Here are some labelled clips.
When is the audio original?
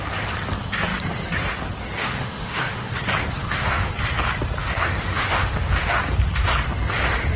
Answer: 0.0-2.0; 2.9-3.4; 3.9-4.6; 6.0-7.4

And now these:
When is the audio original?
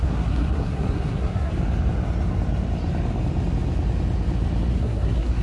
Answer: 1.5-4.7